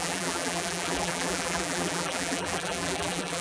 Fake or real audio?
fake